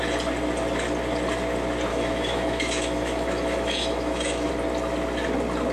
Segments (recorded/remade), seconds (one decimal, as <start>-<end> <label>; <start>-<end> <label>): 0.0-1.9 recorded; 1.9-4.5 remade; 4.5-5.7 recorded